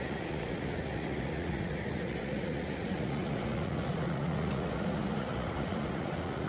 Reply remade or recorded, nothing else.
remade